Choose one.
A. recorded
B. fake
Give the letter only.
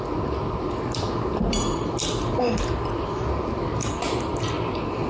A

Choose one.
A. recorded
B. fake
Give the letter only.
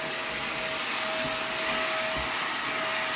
A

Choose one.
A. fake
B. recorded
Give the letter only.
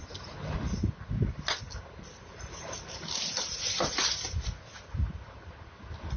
B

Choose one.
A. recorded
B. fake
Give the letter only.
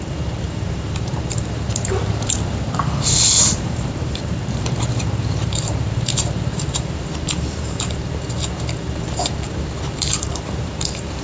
B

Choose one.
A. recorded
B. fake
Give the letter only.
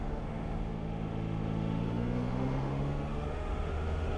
B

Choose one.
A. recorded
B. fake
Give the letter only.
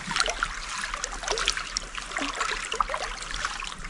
A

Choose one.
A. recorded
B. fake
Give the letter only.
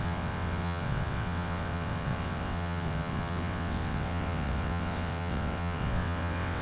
B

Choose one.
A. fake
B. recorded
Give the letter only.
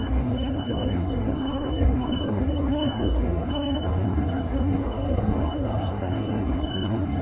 A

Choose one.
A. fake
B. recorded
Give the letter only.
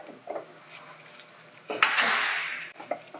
B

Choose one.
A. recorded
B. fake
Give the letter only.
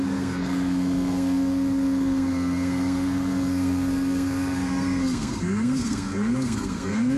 B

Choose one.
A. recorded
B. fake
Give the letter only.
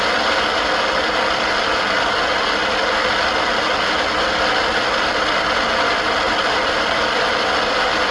A